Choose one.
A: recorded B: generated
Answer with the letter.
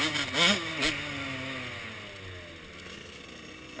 A